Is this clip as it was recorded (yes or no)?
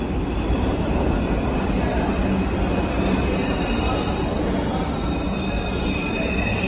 yes